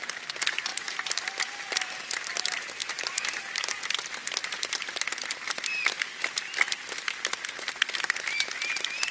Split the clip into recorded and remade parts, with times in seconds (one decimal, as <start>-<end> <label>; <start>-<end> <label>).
0.0-0.7 recorded; 0.7-1.2 remade; 1.2-2.8 recorded; 2.8-3.7 remade; 3.7-9.1 recorded